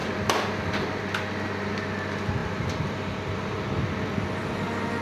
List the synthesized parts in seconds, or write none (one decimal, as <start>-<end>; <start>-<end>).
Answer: 0.0-1.0; 2.4-3.7